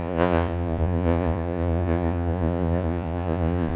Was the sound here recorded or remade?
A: remade